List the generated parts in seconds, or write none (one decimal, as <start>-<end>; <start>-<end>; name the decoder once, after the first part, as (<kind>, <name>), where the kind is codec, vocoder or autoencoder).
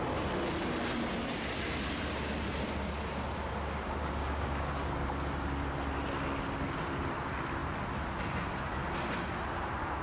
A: 4.0-4.9 (codec, DAC)